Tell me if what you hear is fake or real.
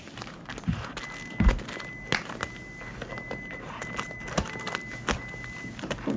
real